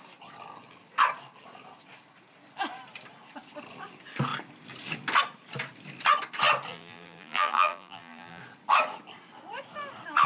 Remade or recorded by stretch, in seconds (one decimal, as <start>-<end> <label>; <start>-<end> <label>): 0.0-6.7 recorded; 6.7-8.4 remade; 8.4-10.3 recorded